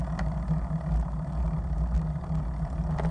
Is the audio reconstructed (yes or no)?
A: no